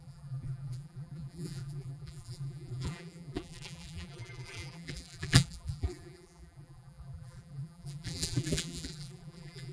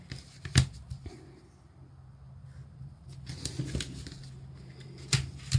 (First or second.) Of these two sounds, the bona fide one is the second